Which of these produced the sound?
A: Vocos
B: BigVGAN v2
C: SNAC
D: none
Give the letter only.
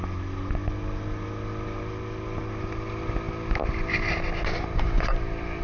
D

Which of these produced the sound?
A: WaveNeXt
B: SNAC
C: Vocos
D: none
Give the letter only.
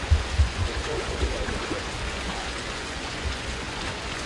C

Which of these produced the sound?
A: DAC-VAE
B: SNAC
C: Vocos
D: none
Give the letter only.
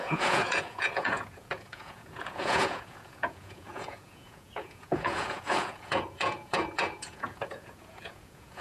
C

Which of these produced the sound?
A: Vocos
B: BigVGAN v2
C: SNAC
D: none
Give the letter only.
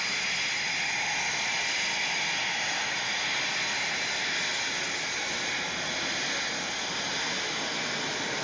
D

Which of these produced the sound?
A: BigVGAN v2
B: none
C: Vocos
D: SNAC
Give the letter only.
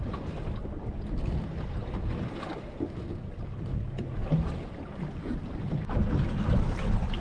B